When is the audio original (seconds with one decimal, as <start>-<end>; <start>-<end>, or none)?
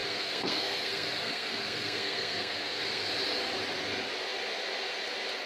3.1-5.5